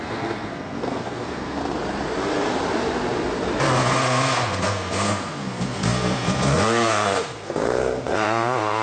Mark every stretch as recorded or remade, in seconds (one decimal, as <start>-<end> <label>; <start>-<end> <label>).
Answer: 0.0-1.6 remade; 1.6-3.8 recorded; 3.8-8.8 remade